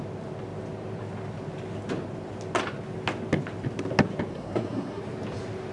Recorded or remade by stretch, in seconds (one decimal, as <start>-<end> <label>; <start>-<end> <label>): 0.0-4.3 recorded; 4.3-5.0 remade; 5.0-5.7 recorded